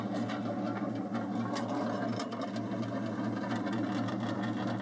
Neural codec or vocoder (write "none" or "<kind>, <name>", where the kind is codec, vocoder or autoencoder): none